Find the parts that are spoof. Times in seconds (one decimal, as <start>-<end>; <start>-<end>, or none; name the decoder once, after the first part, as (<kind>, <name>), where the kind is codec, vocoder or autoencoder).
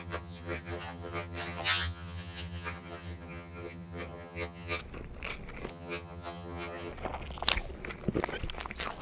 0.0-4.8 (vocoder, HiFi-GAN); 5.7-6.9